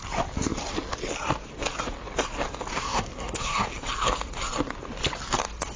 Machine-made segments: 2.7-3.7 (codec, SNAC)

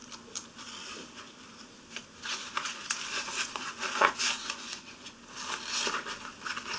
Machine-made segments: 2.3-5.1 (vocoder, Vocos)